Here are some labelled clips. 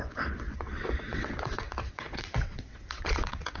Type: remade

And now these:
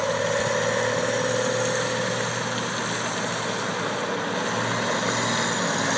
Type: recorded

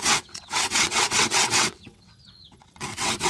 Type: remade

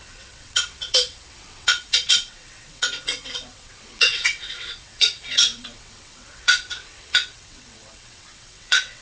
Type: remade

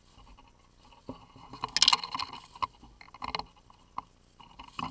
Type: recorded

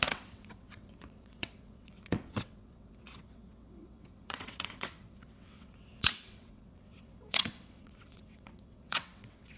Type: remade